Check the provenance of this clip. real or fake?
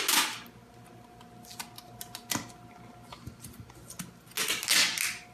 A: real